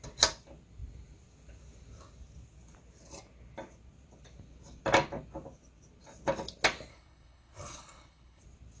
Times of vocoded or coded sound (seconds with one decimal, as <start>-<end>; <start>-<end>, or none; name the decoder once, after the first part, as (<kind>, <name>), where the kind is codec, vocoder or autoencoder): 6.9-8.4 (codec, HILCodec)